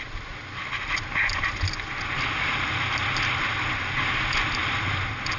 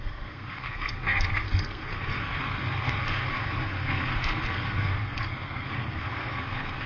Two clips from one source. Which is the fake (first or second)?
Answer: second